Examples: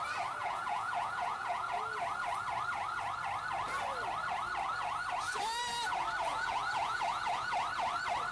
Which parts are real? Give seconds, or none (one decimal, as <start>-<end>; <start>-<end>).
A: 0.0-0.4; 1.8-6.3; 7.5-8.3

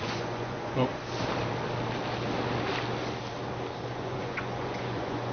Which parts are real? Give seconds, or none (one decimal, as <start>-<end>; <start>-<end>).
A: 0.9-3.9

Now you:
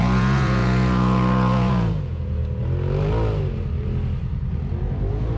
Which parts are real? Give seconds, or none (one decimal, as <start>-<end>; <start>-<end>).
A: 2.4-5.4